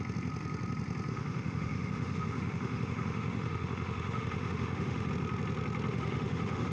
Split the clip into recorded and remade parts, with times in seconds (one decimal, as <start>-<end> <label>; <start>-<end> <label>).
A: 0.0-1.1 recorded; 1.1-5.1 remade; 5.1-5.9 recorded; 5.9-6.7 remade